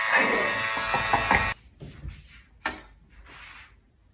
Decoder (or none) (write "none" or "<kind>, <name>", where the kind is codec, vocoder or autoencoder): none